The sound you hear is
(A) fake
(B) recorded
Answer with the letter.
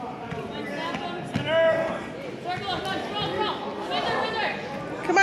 B